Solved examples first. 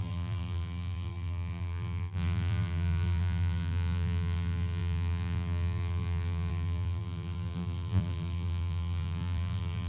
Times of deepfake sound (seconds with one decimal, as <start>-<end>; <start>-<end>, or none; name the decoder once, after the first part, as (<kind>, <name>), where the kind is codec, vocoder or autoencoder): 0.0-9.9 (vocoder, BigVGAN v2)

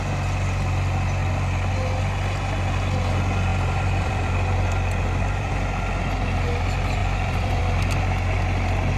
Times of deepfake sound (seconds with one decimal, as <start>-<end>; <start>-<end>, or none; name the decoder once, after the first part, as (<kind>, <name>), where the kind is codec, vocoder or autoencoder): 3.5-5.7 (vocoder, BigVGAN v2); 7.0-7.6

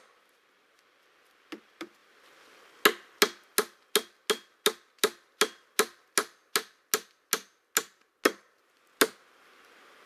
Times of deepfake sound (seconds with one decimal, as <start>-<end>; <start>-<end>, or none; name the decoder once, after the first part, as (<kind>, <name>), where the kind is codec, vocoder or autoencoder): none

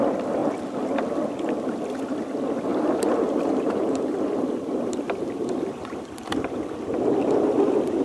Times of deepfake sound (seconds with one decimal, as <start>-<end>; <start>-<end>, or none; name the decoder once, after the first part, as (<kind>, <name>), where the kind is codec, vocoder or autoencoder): 2.7-6.1 (vocoder, BigVGAN v2)

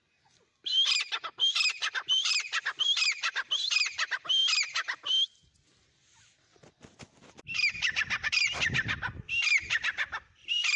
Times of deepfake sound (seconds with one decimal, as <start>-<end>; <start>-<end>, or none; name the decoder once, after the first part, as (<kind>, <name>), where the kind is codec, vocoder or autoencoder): 0.0-2.3 (vocoder, BigVGAN v2); 3.2-4.4; 7.4-10.8

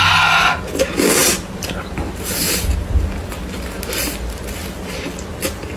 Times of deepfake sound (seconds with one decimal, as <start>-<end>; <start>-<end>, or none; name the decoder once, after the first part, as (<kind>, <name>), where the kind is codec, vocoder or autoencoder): 1.2-2.8 (vocoder, BigVGAN v2)